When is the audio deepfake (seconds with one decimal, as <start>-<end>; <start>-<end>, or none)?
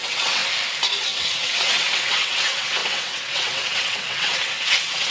0.0-0.4; 1.0-5.1